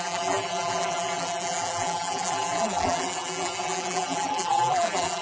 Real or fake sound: fake